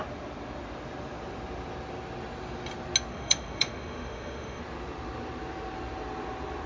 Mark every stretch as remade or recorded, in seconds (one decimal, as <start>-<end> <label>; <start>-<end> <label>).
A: 0.0-3.1 recorded; 3.1-4.6 remade; 4.6-6.7 recorded